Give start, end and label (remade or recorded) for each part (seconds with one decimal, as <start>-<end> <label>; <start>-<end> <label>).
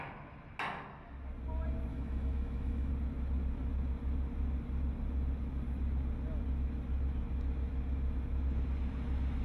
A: 0.0-1.9 recorded; 1.9-2.9 remade; 2.9-9.4 recorded